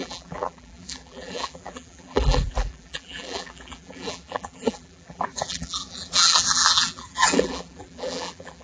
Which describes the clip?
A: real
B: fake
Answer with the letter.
B